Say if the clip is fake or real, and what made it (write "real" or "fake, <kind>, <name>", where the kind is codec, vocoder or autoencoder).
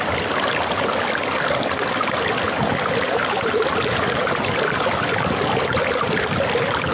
real